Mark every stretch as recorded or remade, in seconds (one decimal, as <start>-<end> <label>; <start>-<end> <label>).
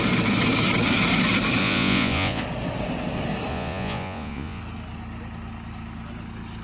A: 0.0-1.6 recorded; 1.6-2.4 remade; 2.4-3.5 recorded; 3.5-4.6 remade; 4.6-6.6 recorded